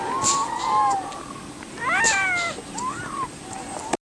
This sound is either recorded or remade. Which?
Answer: recorded